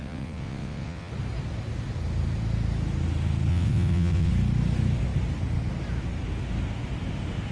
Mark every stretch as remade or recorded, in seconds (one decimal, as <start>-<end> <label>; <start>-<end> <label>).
0.0-1.1 remade; 1.1-3.5 recorded; 3.5-4.3 remade; 4.3-7.5 recorded